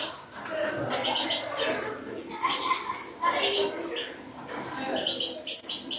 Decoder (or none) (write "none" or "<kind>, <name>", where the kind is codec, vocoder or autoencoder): none